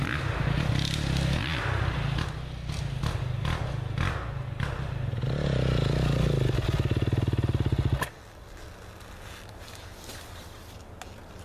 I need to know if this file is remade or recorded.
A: recorded